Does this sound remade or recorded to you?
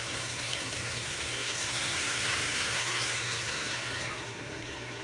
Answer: remade